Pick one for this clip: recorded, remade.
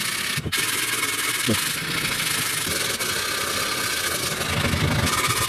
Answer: recorded